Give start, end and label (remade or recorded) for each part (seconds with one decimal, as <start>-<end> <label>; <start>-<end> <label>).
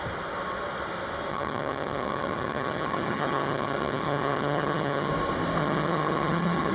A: 0.0-1.3 recorded; 1.3-5.1 remade; 5.1-5.6 recorded; 5.6-6.7 remade